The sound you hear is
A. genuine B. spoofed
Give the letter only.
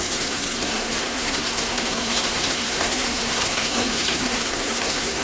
B